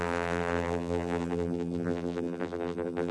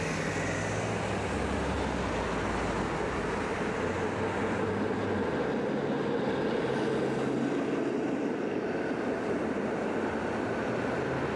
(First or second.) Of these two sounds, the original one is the second